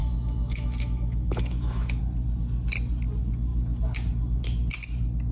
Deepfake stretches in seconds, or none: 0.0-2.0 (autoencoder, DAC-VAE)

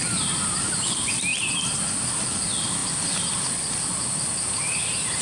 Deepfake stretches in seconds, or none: none

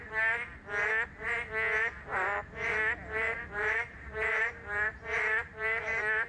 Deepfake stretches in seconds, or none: 2.1-6.3 (vocoder, BigVGAN v2)

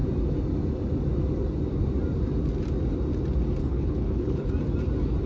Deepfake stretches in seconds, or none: 3.6-4.5 (codec, HILCodec)